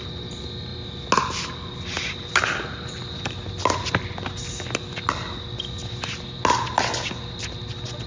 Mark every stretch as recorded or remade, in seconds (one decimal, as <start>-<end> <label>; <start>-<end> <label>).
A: 0.0-8.1 recorded